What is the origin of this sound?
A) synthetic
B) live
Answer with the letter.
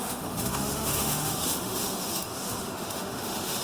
A